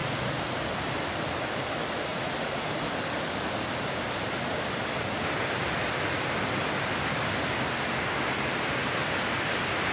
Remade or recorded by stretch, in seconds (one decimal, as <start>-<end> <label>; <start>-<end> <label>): 0.0-2.1 recorded; 2.1-2.7 remade; 2.7-9.9 recorded